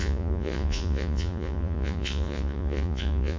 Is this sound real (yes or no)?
no